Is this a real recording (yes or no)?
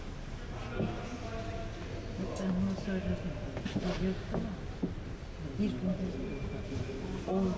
yes